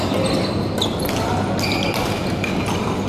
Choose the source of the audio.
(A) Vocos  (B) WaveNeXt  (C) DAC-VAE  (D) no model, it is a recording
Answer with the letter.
D